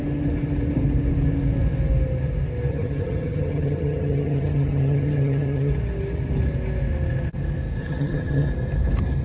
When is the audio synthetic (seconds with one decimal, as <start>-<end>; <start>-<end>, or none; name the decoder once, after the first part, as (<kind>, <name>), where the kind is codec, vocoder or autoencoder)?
2.7-5.7 (vocoder, HiFi-GAN); 7.8-8.5